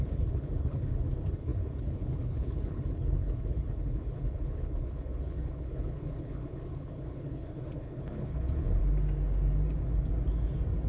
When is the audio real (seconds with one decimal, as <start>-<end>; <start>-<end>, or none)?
8.8-10.9